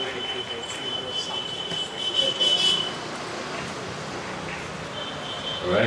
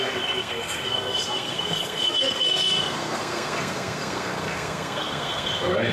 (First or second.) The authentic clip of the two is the first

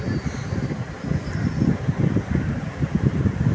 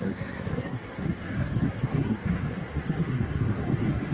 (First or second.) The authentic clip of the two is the first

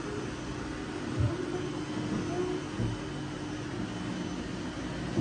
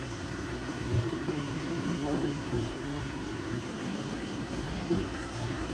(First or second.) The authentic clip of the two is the first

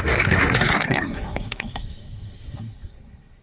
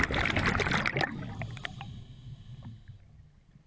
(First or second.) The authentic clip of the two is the second